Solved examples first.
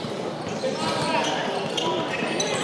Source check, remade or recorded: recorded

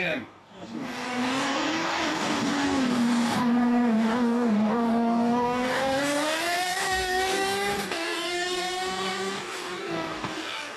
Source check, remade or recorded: remade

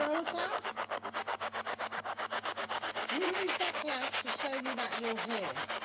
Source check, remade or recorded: remade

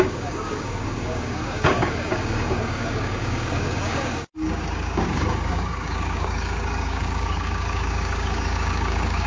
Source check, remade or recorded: remade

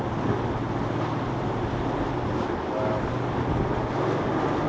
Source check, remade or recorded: recorded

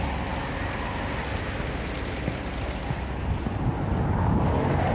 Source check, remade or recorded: recorded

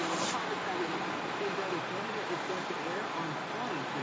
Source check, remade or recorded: recorded